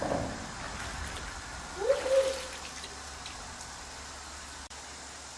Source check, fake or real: fake